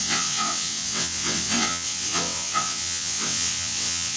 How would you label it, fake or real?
fake